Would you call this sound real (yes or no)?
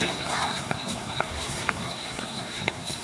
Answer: no